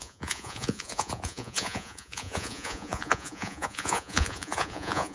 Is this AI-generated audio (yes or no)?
yes